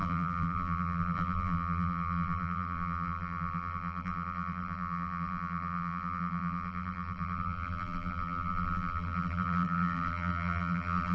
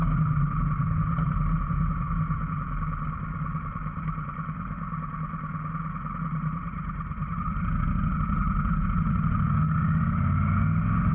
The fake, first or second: first